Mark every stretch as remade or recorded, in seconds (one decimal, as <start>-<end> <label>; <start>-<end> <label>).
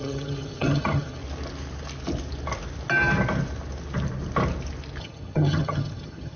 0.0-1.2 remade; 1.2-5.0 recorded; 5.0-6.4 remade